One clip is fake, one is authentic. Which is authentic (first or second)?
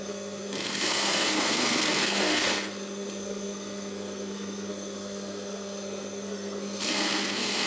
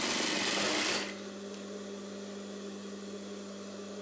second